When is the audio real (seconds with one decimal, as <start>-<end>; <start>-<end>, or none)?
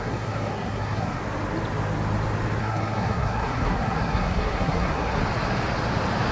1.2-2.6; 5.2-6.3